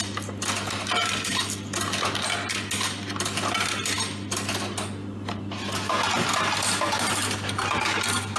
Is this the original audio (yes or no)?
yes